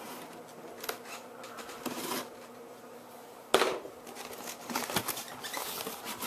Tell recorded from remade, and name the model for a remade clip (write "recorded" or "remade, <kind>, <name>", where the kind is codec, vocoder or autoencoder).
remade, vocoder, BigVGAN v2